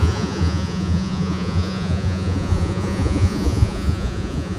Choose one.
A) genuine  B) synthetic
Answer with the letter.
B